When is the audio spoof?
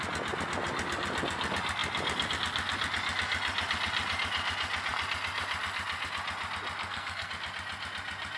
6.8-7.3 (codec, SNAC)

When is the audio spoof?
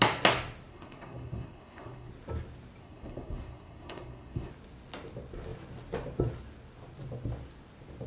0.7-2.1 (codec, SNAC); 2.8-4.5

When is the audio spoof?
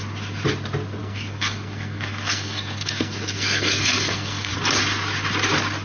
1.0-4.5 (codec, SNAC)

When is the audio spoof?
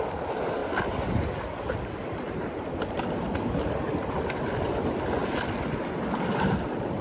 none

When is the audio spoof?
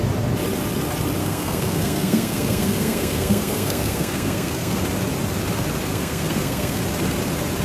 1.2-4.8 (codec, SNAC); 5.9-6.8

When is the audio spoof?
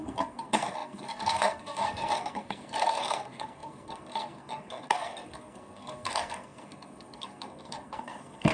0.0-8.5 (codec, SNAC)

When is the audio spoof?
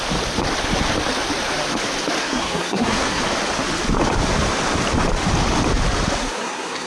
2.2-3.2 (codec, SNAC); 6.2-6.9